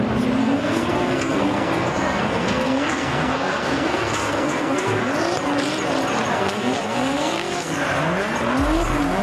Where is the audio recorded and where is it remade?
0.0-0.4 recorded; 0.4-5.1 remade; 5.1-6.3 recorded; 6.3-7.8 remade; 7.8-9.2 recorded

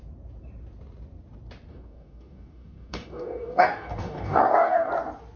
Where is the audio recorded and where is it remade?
0.0-1.7 recorded; 1.7-4.9 remade; 4.9-5.4 recorded

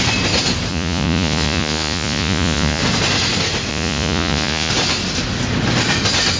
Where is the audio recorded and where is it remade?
0.0-0.7 recorded; 0.7-2.8 remade; 2.8-3.7 recorded; 3.7-4.7 remade; 4.7-6.4 recorded

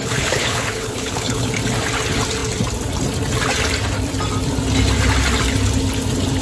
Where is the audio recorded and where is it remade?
0.0-1.5 remade; 1.5-6.4 recorded

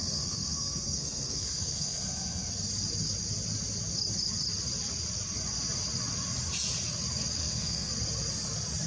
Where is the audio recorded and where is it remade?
0.0-2.5 remade; 2.5-7.4 recorded; 7.4-7.9 remade; 7.9-8.9 recorded